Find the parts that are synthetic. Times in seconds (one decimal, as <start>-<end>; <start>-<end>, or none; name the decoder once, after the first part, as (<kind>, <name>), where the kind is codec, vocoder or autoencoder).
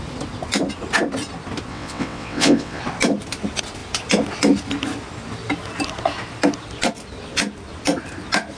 1.7-2.8 (vocoder, WaveNeXt)